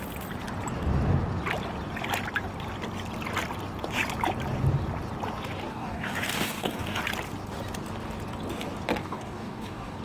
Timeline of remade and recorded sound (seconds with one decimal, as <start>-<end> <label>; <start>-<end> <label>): 0.0-5.7 recorded; 5.7-7.0 remade; 7.0-9.0 recorded; 9.0-10.0 remade

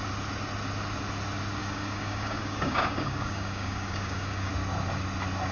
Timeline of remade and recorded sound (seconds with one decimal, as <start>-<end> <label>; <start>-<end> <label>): 0.0-1.6 recorded; 1.6-4.5 remade; 4.5-5.5 recorded